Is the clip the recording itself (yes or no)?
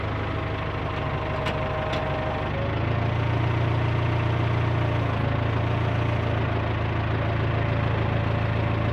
yes